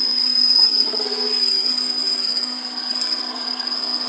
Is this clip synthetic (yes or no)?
yes